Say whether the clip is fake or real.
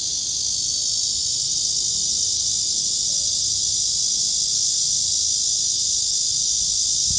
real